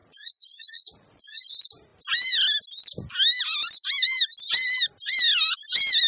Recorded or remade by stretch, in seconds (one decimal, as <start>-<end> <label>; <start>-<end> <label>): 0.0-1.5 remade; 1.5-6.1 recorded